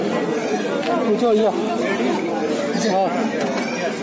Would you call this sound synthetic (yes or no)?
no